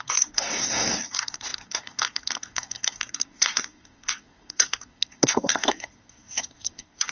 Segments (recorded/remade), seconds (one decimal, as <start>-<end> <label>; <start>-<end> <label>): 0.0-7.1 remade